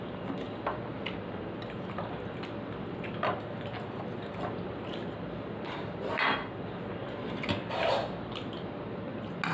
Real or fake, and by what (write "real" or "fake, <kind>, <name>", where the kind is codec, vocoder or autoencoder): real